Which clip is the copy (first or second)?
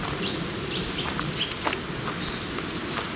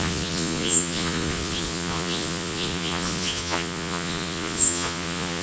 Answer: second